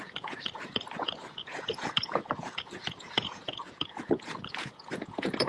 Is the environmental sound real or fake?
fake